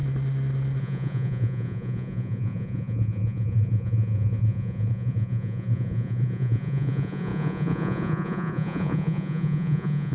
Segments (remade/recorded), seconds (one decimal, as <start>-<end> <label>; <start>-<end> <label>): 0.0-0.8 recorded; 0.8-10.1 remade